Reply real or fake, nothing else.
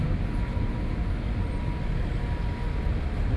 real